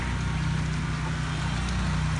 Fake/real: real